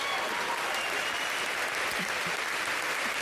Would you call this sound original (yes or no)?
yes